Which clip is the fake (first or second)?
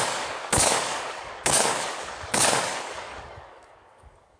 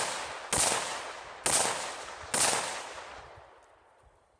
first